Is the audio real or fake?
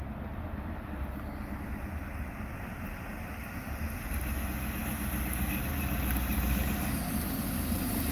real